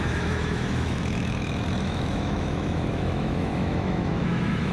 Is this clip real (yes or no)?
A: no